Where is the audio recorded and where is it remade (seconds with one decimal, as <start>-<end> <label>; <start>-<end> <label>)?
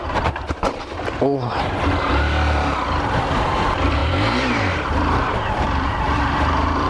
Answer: 0.0-6.9 remade